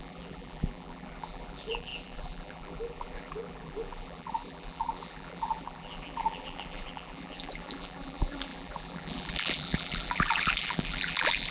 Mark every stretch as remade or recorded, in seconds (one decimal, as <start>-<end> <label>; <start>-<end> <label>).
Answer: 0.0-11.5 remade